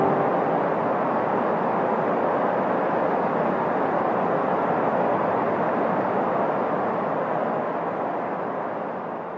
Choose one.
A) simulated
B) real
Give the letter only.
B